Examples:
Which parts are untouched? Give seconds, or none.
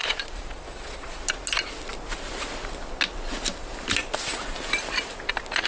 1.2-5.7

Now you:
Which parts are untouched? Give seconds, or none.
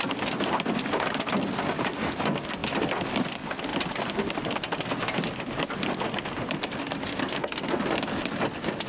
0.0-7.2; 7.8-8.9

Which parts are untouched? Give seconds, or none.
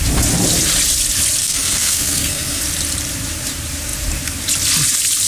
0.0-1.4; 2.6-5.3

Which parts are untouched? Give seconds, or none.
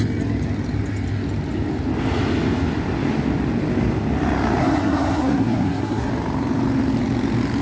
0.0-4.6; 6.1-7.6